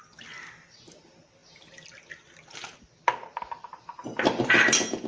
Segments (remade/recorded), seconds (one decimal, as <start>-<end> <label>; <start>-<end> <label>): 0.0-5.1 recorded